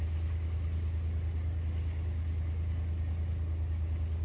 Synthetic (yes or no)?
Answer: no